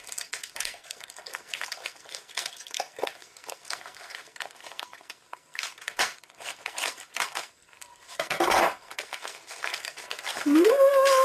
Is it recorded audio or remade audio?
remade